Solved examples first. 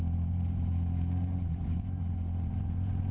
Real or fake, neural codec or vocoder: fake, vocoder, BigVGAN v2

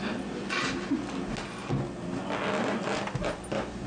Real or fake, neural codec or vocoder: real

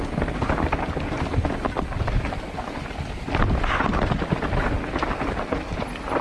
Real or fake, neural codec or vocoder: real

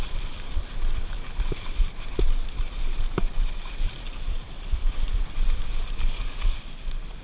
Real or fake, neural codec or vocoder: fake, vocoder, BigVGAN v2